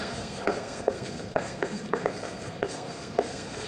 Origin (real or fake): fake